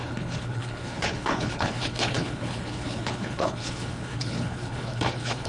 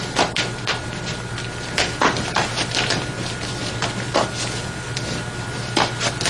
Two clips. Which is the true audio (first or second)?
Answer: second